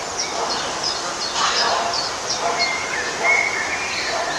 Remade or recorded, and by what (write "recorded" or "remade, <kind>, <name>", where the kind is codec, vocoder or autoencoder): recorded